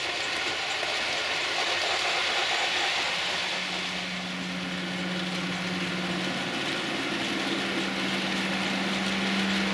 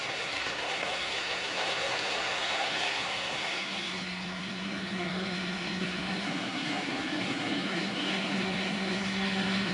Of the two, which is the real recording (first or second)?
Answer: first